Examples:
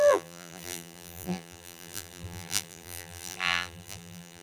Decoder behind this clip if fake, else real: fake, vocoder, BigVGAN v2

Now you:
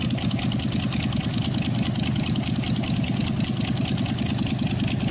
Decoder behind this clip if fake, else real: real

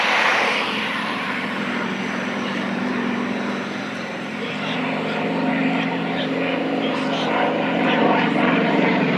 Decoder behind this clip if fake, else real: fake, vocoder, BigVGAN v2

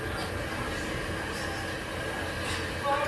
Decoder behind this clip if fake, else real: real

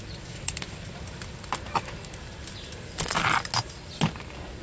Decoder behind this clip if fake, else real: real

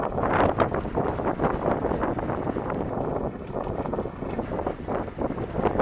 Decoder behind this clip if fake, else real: real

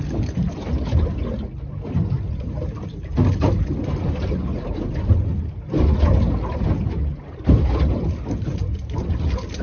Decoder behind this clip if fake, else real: real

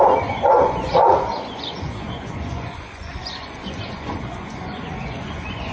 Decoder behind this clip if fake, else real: fake, vocoder, Vocos